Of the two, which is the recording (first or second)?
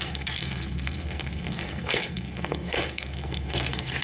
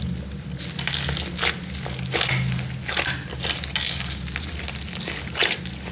second